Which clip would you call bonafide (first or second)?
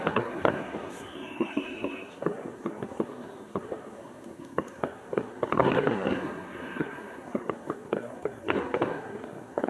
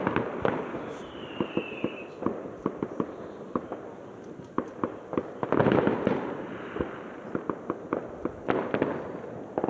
second